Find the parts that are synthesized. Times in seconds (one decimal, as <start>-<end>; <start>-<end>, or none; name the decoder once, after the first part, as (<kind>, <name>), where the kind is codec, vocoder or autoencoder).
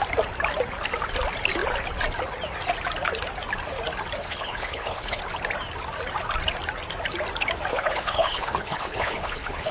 4.2-5.2 (codec, HILCodec); 7.7-9.7